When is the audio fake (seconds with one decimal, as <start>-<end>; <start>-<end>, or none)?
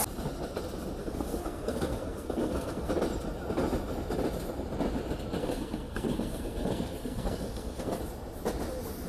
1.0-2.9; 5.4-8.0